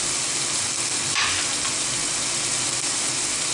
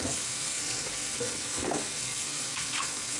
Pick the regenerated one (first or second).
second